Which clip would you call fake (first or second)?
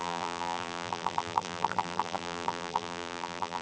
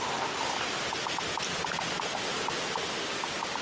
first